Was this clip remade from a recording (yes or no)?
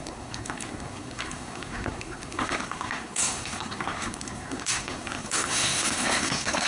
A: yes